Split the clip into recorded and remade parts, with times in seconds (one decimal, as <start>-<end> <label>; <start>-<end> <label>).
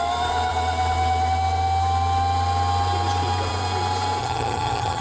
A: 0.0-4.2 recorded; 4.2-5.0 remade